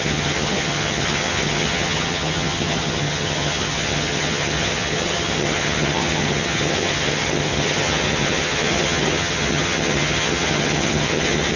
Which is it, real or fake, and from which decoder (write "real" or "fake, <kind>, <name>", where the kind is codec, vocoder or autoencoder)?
fake, vocoder, HiFi-GAN